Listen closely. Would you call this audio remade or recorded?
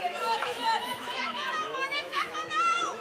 remade